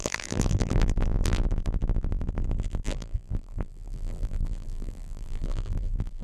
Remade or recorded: remade